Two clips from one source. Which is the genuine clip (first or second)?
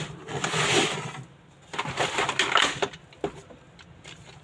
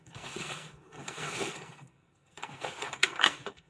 first